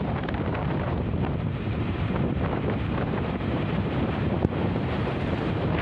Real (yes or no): no